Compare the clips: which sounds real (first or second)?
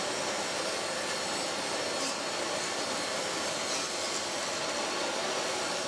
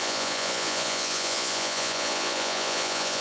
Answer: first